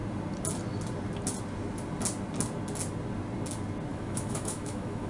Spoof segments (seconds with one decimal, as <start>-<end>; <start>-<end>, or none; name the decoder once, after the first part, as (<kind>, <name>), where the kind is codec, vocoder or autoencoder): 3.9-5.1 (autoencoder, DAC-VAE)